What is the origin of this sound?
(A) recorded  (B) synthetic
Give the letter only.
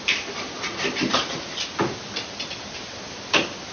A